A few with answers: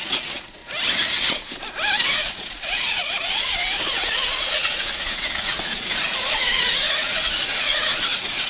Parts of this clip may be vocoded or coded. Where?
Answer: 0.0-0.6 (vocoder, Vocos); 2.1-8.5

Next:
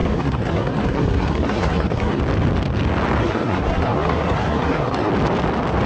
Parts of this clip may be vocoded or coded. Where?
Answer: 0.0-2.2 (codec, SNAC); 3.2-5.1

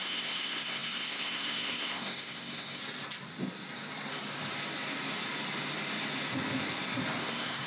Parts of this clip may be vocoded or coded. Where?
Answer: 0.0-2.8 (codec, SNAC); 7.2-7.7

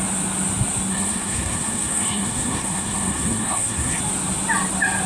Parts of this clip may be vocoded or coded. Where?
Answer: 0.9-4.0 (codec, SNAC)

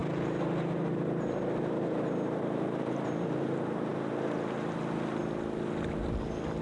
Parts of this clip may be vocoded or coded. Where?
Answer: 0.0-3.9 (vocoder, BigVGAN v2)

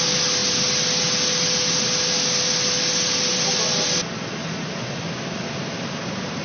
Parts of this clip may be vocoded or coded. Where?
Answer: 4.4-5.0 (vocoder, Vocos)

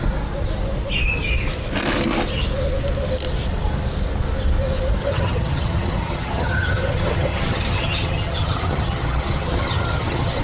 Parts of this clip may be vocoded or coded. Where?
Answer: 5.0-10.4 (vocoder, HiFi-GAN)

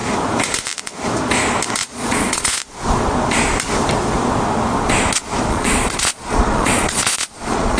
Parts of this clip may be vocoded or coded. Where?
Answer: 1.8-2.6 (vocoder, Vocos); 5.5-7.8